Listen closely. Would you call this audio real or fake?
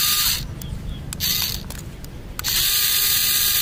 real